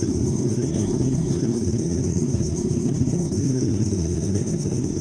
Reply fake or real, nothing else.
fake